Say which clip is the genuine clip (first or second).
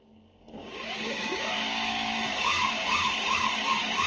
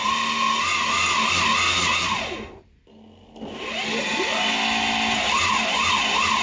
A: second